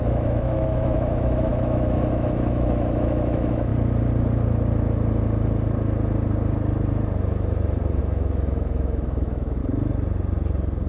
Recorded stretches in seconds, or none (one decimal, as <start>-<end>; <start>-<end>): 3.7-8.0; 9.6-10.9

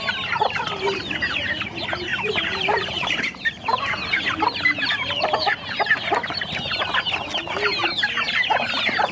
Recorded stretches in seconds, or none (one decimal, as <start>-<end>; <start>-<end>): 0.0-2.1; 4.2-9.1